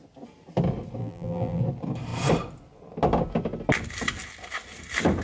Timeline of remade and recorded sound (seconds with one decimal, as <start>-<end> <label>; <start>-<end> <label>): 0.0-1.0 recorded; 1.0-1.6 remade; 1.6-5.2 recorded